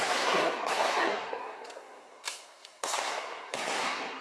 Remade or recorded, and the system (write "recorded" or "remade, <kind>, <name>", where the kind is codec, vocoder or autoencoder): remade, codec, SNAC